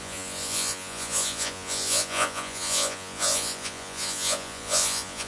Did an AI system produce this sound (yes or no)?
yes